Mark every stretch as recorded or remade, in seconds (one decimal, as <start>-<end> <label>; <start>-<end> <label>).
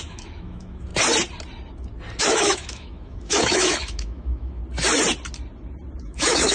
0.0-0.9 remade; 0.9-2.2 recorded; 2.2-4.6 remade; 4.6-6.0 recorded; 6.0-6.5 remade